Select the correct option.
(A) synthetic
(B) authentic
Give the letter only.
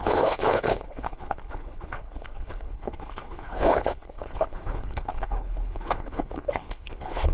A